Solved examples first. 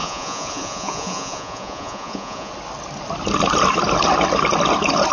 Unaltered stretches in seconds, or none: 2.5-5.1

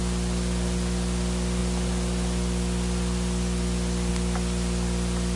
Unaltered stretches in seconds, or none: 0.0-5.4